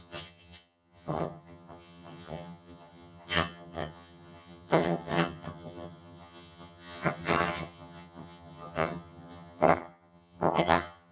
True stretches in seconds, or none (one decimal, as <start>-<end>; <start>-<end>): none